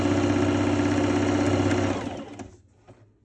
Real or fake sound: real